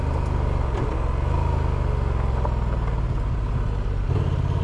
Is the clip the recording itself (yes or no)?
yes